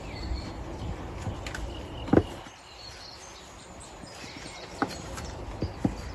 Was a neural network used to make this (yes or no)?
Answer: no